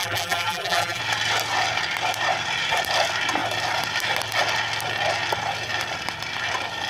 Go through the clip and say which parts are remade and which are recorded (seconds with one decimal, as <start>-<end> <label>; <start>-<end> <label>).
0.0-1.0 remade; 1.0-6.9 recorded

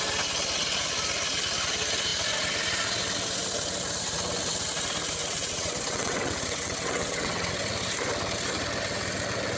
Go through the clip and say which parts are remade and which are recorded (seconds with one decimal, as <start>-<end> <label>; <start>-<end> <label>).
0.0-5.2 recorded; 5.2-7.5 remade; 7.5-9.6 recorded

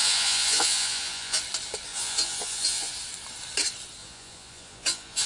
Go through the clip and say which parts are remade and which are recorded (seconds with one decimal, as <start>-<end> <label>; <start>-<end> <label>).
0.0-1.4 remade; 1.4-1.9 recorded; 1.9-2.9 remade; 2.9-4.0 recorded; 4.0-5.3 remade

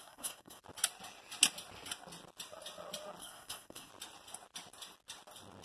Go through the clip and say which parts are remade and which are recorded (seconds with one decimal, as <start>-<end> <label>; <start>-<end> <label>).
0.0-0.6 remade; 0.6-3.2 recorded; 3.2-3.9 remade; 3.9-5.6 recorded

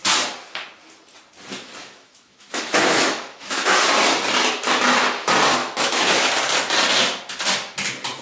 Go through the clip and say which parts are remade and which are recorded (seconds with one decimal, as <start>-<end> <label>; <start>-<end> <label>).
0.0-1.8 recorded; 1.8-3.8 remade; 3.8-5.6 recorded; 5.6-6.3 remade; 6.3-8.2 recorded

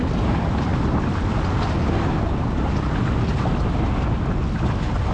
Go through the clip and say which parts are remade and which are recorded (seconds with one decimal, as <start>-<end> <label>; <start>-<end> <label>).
0.0-5.1 recorded